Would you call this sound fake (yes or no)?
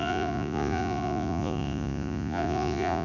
yes